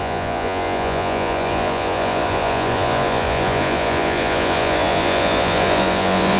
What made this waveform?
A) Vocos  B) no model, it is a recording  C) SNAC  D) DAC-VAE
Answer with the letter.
A